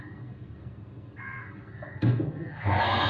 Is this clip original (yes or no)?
no